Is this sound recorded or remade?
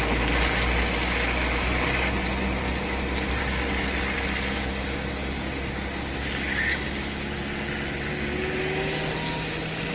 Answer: recorded